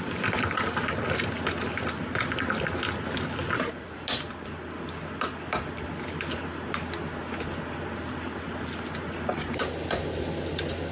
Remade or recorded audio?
recorded